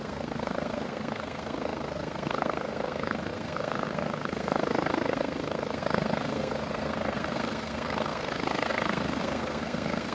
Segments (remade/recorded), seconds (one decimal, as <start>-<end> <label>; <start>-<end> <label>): 0.0-10.1 remade